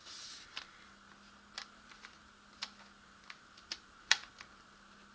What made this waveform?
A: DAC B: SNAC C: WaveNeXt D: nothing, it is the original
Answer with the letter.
D